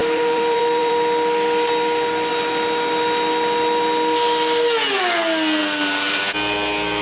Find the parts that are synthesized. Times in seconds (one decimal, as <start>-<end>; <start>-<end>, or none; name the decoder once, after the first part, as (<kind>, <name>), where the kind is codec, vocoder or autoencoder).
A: 0.0-0.9 (vocoder, BigVGAN v2); 5.6-6.2